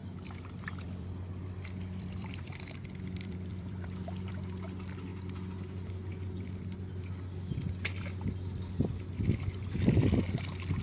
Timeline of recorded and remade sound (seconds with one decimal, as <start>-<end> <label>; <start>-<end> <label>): 0.0-4.3 remade; 4.3-10.8 recorded